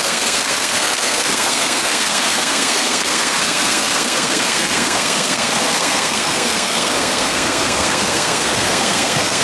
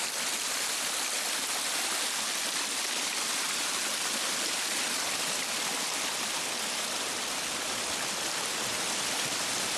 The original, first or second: second